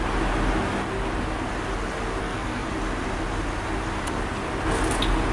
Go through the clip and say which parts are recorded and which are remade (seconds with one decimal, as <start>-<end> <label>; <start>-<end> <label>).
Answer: 0.0-2.2 recorded; 2.2-2.7 remade; 2.7-5.3 recorded